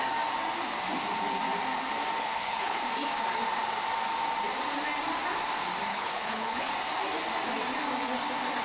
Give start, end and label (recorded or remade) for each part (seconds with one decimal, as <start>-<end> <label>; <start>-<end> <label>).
0.0-2.2 recorded; 2.2-2.8 remade; 2.8-5.9 recorded; 5.9-6.7 remade; 6.7-8.6 recorded